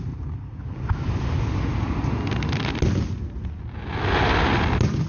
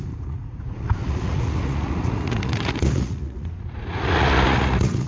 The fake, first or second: second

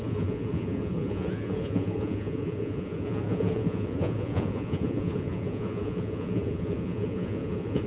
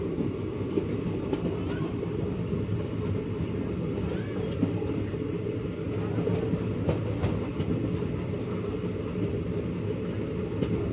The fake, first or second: first